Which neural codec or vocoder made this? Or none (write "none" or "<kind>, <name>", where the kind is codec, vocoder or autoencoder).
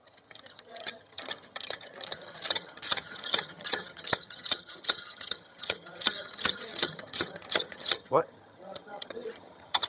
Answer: vocoder, HiFi-GAN